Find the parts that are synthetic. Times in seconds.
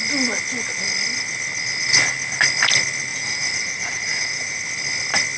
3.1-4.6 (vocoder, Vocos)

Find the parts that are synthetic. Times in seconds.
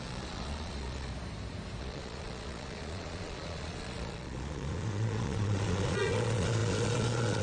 0.0-1.1 (vocoder, Vocos); 1.8-7.4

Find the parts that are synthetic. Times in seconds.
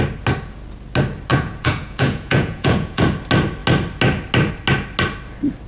1.3-3.0 (vocoder, Vocos)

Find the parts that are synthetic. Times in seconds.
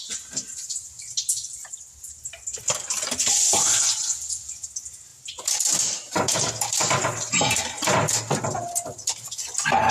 none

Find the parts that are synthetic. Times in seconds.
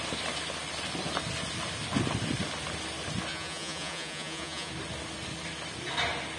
3.3-4.7 (vocoder, Vocos)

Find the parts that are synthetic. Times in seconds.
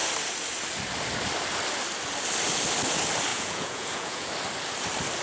3.3-4.3 (vocoder, Vocos)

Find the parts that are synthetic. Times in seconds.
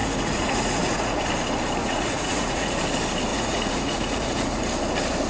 0.0-1.2 (vocoder, Vocos); 1.8-2.8; 3.3-4.6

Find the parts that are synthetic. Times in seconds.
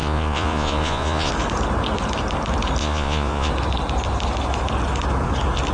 0.0-1.3 (vocoder, Vocos); 2.8-3.5